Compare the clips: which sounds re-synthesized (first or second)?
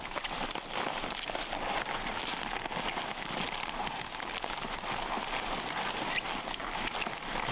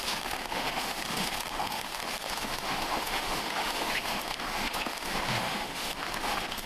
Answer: second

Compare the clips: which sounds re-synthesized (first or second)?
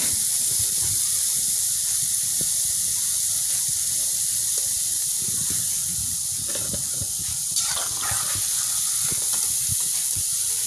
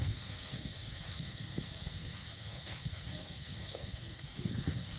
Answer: second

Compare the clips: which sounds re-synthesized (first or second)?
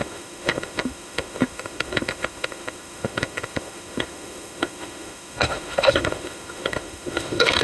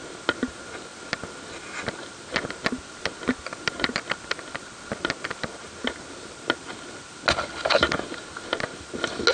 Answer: first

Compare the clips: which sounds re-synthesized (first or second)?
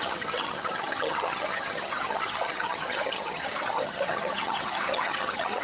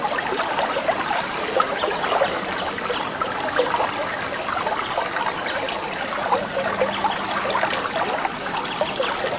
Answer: first